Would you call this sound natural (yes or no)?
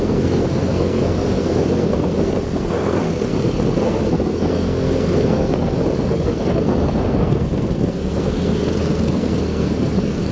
no